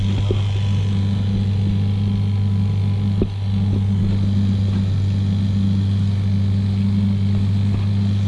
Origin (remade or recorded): recorded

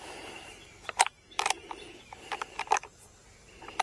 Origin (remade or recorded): recorded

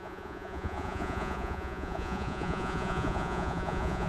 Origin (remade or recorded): remade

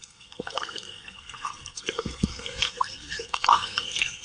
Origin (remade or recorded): remade